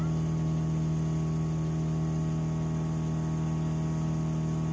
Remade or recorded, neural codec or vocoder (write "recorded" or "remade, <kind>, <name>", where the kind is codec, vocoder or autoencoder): recorded